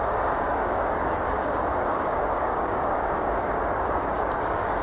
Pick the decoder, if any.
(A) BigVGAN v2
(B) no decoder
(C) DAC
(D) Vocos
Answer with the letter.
C